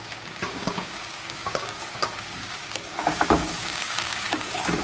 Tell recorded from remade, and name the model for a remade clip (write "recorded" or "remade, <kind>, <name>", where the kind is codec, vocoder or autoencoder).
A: remade, codec, DAC